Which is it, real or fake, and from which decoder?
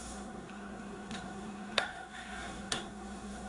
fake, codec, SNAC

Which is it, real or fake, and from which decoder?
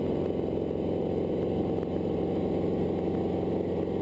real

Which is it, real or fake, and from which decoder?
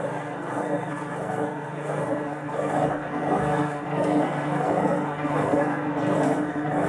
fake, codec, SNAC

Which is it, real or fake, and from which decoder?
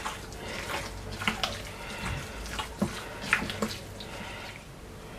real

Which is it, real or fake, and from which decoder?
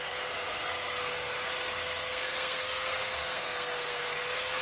fake, codec, SNAC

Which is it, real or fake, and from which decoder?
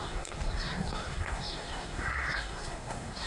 fake, codec, SNAC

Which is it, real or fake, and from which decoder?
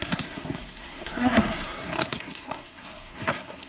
fake, codec, SNAC